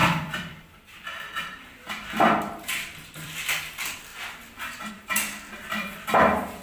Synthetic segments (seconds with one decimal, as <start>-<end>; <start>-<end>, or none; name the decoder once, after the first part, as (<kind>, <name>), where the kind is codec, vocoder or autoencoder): 0.0-4.1 (vocoder, BigVGAN v2); 4.9-6.6